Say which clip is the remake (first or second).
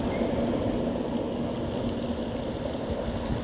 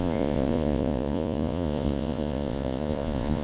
second